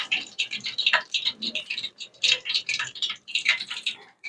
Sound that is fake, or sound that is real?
fake